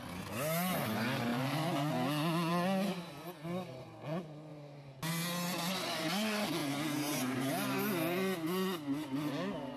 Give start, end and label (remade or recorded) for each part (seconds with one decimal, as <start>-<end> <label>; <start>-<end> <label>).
0.0-1.3 recorded; 1.3-1.9 remade; 1.9-6.6 recorded; 6.6-7.5 remade; 7.5-9.8 recorded